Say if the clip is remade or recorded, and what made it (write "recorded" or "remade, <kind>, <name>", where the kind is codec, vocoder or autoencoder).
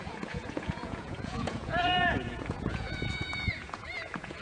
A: remade, vocoder, Vocos